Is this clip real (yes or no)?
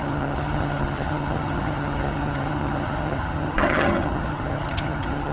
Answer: no